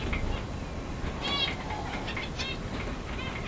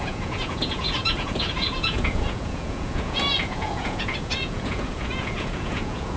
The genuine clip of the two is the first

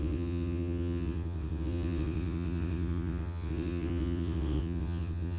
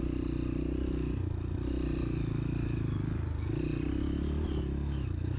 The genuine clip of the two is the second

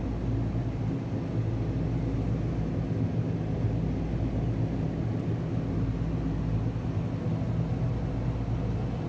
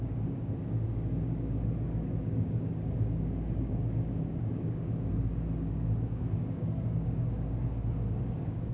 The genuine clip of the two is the first